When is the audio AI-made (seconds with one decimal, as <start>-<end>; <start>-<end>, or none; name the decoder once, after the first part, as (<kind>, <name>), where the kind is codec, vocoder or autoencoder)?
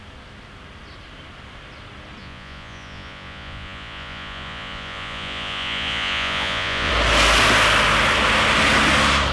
2.2-6.9 (vocoder, Vocos)